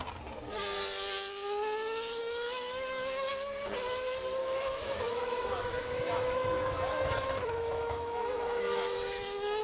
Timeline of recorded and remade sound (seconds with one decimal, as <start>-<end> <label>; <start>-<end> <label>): 0.0-2.2 recorded; 2.2-3.3 remade; 3.3-4.4 recorded; 4.4-9.6 remade